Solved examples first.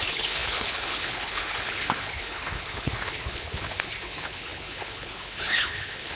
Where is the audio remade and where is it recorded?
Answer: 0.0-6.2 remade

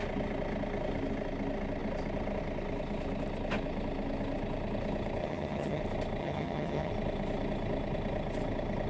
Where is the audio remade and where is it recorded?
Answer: 0.0-5.2 recorded; 5.2-5.8 remade; 5.8-6.2 recorded; 6.2-6.9 remade; 6.9-8.9 recorded